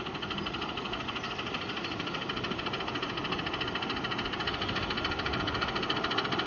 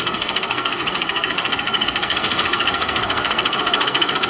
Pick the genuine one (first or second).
first